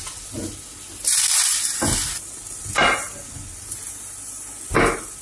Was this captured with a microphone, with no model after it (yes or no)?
yes